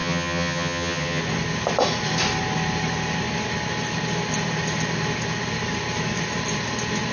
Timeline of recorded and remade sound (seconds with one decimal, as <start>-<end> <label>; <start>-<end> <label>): 0.0-1.2 remade; 1.2-7.1 recorded